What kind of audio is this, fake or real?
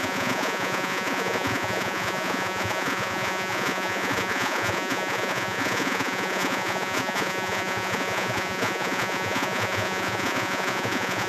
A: fake